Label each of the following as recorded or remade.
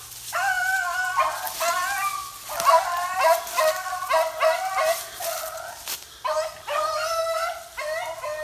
recorded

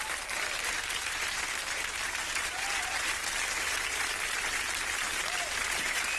remade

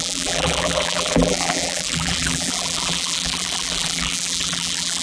remade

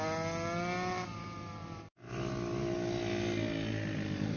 recorded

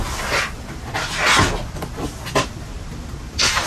recorded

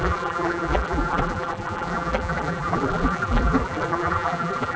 remade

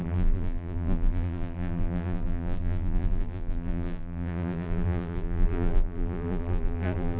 remade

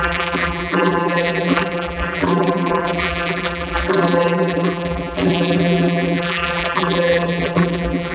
remade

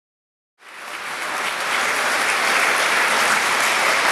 recorded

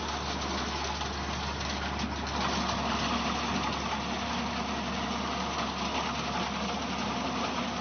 recorded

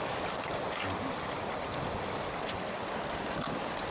remade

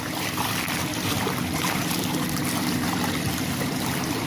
remade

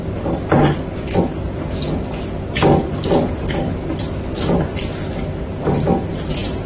recorded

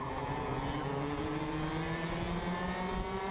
recorded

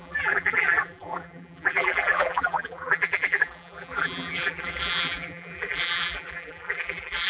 remade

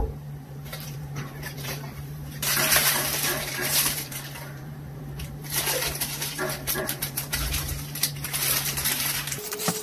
remade